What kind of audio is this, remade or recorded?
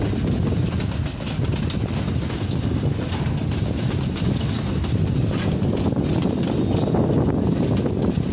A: recorded